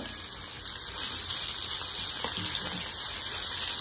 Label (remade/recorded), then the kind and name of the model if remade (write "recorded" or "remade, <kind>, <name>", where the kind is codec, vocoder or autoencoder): recorded